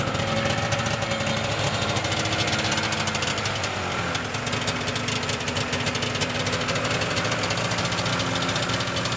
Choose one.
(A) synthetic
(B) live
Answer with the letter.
B